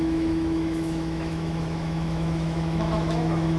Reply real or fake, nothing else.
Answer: fake